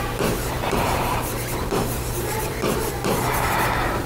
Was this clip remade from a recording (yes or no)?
yes